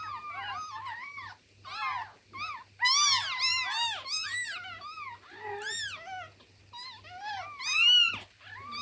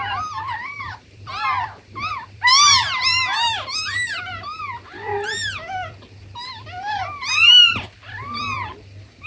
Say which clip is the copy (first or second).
second